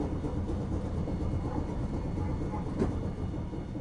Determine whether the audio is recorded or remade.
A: recorded